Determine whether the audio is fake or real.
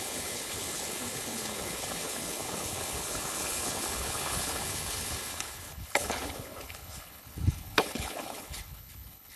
fake